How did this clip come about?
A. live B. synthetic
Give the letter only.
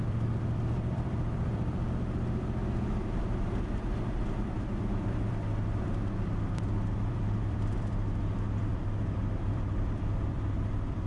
B